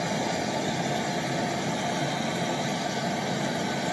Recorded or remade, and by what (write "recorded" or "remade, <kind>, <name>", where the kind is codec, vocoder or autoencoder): recorded